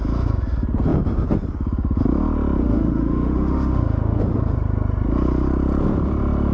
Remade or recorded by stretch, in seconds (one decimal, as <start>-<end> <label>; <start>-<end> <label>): 0.0-2.6 recorded; 2.6-4.2 remade; 4.2-6.5 recorded

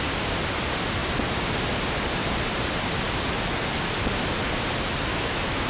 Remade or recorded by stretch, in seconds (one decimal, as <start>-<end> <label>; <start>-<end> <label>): 0.0-5.1 recorded; 5.1-5.7 remade

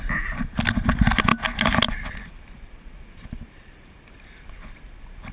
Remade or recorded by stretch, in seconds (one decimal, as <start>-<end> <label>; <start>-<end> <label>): 0.0-5.3 recorded

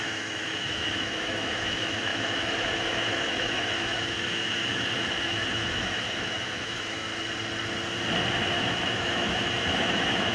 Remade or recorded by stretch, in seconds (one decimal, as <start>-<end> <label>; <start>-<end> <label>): 0.0-7.1 remade; 7.1-8.5 recorded; 8.5-10.3 remade

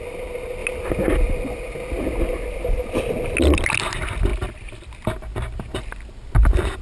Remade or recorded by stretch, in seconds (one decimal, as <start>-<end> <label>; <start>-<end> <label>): 0.0-6.8 recorded

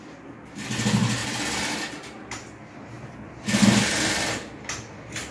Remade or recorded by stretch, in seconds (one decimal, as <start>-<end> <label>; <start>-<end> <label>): 0.0-5.3 recorded

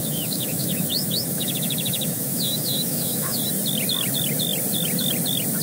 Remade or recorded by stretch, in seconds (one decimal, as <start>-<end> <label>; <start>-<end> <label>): 0.0-3.4 remade; 3.4-5.6 recorded